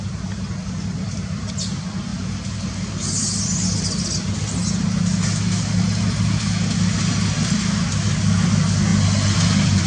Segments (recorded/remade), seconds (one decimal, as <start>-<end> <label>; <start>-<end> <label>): 0.0-2.1 recorded; 2.1-2.6 remade; 2.6-8.9 recorded; 8.9-9.9 remade